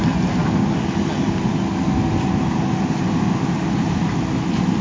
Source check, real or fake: real